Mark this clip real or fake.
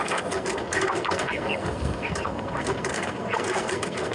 fake